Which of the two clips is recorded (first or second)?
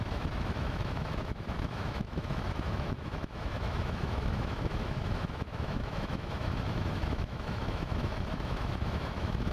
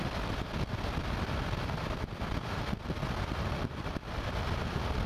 second